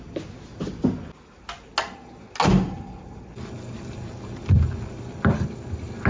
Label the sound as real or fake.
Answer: real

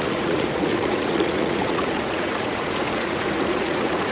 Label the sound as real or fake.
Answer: fake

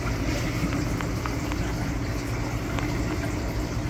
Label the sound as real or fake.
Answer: real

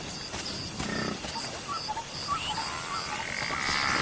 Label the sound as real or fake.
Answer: real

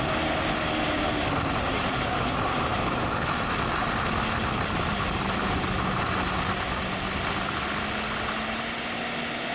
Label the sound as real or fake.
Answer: real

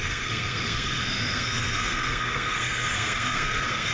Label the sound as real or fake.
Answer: fake